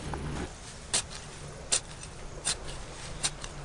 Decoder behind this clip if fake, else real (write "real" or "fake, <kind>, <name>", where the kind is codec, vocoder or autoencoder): real